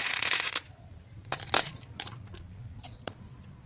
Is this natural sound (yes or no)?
no